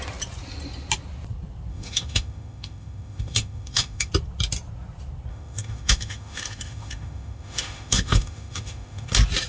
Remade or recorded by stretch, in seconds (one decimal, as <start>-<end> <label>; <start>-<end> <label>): 0.0-1.7 recorded; 1.7-4.1 remade; 4.1-5.3 recorded; 5.3-9.1 remade; 9.1-9.5 recorded